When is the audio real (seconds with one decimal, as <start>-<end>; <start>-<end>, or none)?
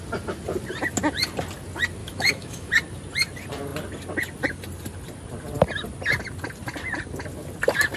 0.0-2.0; 2.7-8.0